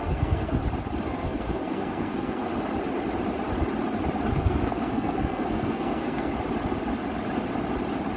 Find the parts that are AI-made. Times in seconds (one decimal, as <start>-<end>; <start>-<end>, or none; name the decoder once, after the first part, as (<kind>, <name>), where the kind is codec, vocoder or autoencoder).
0.0-0.6 (codec, SNAC); 1.1-2.5; 4.3-6.3